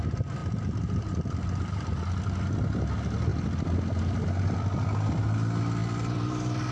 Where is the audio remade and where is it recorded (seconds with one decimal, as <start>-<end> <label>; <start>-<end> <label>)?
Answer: 0.0-0.4 recorded; 0.4-1.3 remade; 1.3-3.3 recorded; 3.3-4.8 remade; 4.8-5.8 recorded; 5.8-6.7 remade